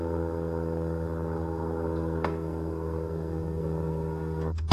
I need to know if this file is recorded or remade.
remade